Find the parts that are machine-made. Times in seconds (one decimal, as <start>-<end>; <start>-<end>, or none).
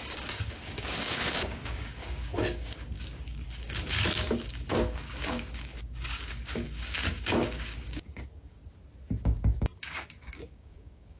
0.0-8.6; 9.2-11.2